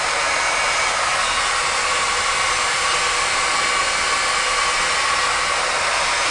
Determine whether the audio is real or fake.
real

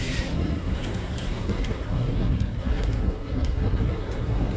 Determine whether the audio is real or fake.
fake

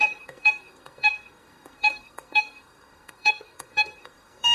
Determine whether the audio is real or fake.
fake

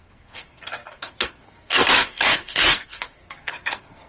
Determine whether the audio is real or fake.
fake